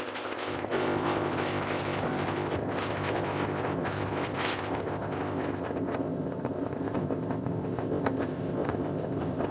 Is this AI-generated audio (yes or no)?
yes